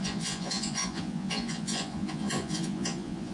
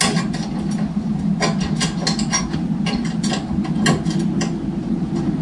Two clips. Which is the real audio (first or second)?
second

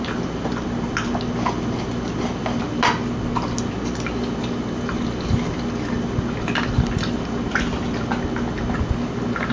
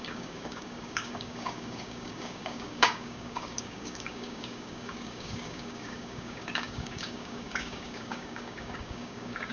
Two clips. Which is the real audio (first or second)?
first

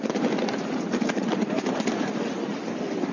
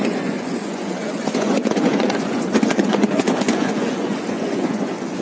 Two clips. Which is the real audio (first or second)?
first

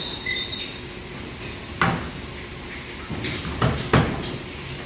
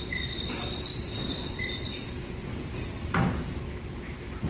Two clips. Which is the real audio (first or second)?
first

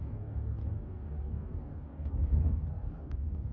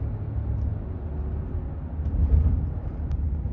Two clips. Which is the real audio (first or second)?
second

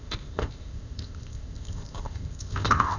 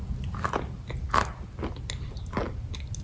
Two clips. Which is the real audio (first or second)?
second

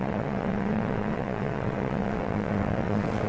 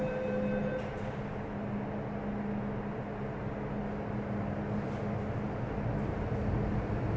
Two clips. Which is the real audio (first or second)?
second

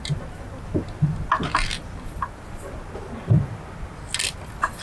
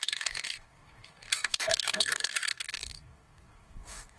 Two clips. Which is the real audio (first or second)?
first